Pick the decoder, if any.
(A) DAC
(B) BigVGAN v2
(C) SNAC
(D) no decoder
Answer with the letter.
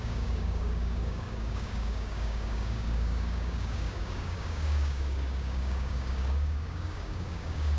A